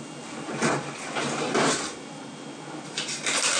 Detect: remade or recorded recorded